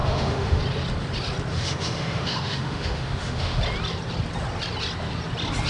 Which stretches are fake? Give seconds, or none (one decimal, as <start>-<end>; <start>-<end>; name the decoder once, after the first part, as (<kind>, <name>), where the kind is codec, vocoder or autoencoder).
0.0-0.6 (autoencoder, DAC-VAE); 1.5-3.6